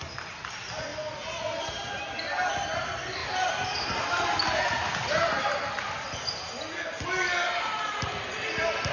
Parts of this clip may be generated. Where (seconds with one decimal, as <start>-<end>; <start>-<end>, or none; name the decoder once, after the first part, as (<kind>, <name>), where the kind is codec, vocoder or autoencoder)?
none